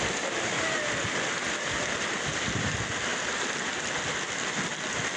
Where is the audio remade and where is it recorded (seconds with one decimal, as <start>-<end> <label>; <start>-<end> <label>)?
0.0-5.2 recorded